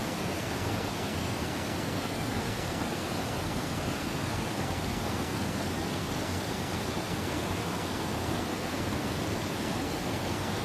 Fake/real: fake